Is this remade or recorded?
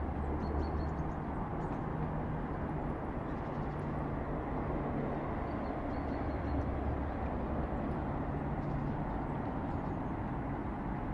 recorded